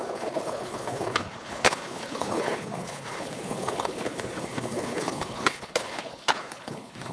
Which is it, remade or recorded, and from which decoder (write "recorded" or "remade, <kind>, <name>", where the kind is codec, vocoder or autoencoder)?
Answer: remade, codec, HILCodec